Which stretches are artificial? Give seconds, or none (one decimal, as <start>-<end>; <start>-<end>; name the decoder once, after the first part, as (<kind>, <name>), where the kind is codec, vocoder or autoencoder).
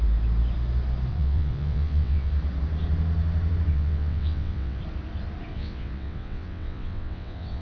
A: 1.1-2.3 (vocoder, WaveNeXt); 3.7-4.8; 5.5-7.6